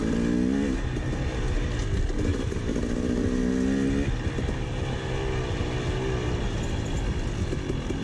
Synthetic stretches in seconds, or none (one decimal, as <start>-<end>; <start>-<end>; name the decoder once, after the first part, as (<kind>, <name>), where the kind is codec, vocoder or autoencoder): 2.3-2.8 (vocoder, BigVGAN v2)

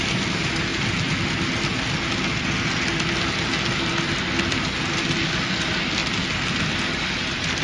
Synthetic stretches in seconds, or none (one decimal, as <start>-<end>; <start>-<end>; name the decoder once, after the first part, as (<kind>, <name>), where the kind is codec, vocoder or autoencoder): 0.0-0.7 (vocoder, BigVGAN v2); 5.3-6.0; 6.6-7.6

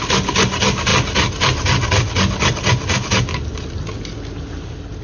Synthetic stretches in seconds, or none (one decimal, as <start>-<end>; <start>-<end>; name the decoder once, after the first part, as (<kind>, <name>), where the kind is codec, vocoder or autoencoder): none

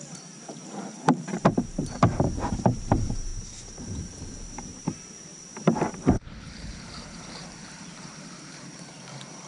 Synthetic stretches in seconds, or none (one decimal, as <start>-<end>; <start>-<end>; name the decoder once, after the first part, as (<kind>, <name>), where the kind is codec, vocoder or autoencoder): 0.0-9.5 (vocoder, BigVGAN v2)

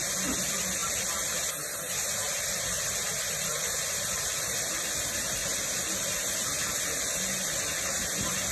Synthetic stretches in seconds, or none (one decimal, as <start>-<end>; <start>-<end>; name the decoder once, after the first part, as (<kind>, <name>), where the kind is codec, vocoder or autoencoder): none

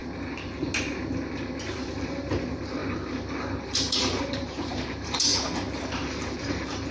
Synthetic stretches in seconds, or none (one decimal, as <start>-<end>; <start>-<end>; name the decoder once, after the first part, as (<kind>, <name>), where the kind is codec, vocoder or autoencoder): 1.6-2.8 (vocoder, BigVGAN v2); 3.6-5.3; 6.1-6.9

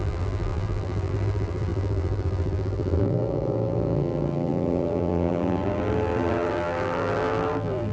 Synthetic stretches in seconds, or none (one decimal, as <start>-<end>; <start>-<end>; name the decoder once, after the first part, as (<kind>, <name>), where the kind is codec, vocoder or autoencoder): 0.0-7.9 (vocoder, BigVGAN v2)

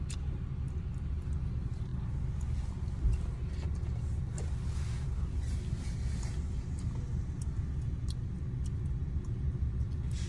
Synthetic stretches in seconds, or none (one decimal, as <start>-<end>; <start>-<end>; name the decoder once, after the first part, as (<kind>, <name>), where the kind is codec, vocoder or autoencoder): none